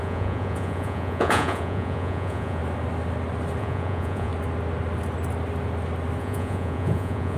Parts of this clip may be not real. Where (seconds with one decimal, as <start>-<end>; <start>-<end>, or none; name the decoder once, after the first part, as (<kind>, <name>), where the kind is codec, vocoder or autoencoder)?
0.0-2.6 (vocoder, Vocos); 3.6-4.3; 6.2-7.4